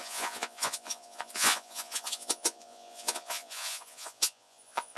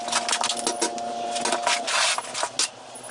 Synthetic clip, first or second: first